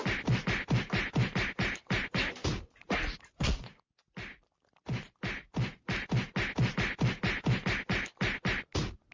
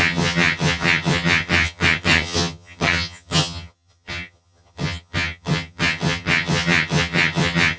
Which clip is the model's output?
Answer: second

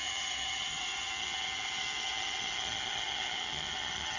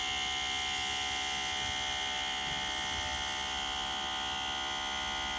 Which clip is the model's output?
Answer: first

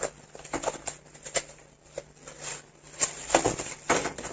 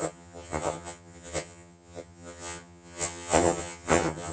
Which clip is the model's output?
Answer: second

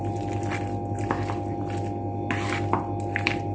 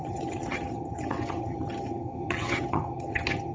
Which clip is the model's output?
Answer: second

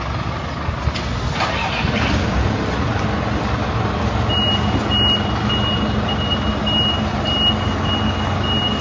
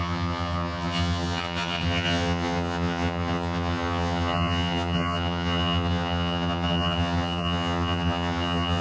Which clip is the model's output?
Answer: second